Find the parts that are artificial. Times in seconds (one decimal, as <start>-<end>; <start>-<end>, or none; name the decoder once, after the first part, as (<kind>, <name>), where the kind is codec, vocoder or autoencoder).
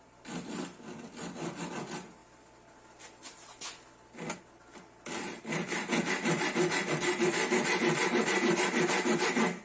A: none